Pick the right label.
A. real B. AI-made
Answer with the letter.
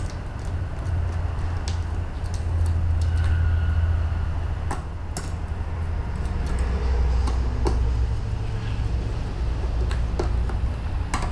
A